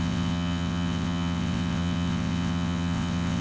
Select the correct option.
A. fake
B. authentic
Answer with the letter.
A